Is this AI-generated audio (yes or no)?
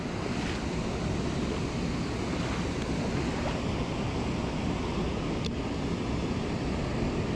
no